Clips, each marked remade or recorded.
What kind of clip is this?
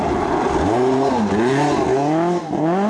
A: recorded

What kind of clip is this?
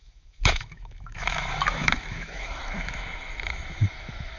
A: remade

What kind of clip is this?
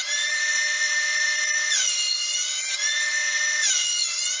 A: remade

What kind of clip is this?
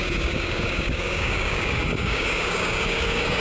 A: remade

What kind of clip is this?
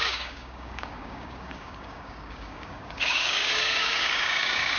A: remade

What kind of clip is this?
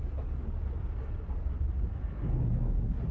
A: recorded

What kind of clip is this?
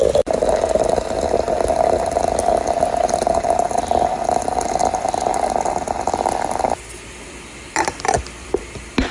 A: recorded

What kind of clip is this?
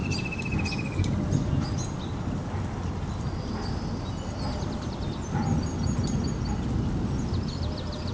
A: recorded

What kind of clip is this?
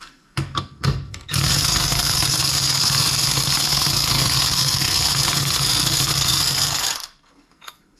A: remade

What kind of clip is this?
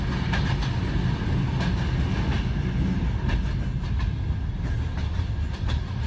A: recorded